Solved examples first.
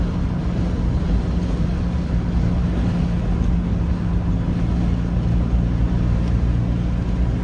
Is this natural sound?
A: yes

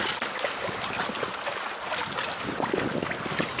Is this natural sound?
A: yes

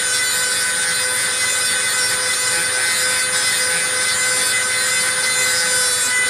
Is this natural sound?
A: yes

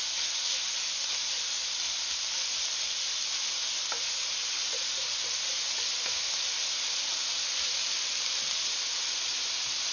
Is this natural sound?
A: yes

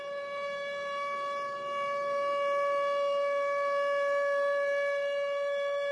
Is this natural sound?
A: yes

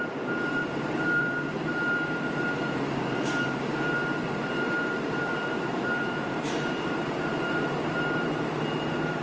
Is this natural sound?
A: no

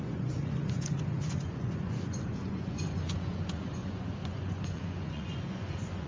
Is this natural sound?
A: no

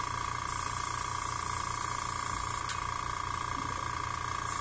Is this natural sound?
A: yes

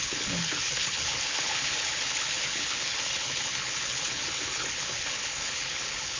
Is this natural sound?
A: no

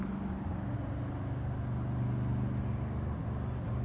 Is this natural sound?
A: yes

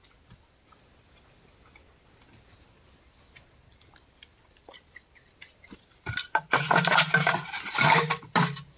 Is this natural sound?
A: yes